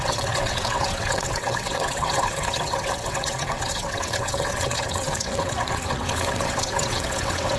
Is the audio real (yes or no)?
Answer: no